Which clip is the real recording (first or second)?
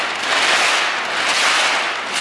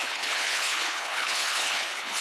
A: first